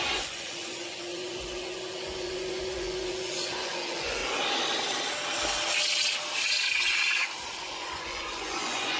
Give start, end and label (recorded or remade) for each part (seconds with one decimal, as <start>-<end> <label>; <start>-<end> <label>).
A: 0.0-4.2 remade; 4.2-7.6 recorded; 7.6-9.0 remade